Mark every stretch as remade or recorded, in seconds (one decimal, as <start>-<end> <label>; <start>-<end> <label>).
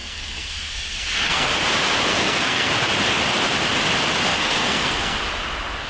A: 0.0-1.5 remade; 1.5-2.1 recorded; 2.1-2.7 remade; 2.7-4.3 recorded; 4.3-5.2 remade; 5.2-5.9 recorded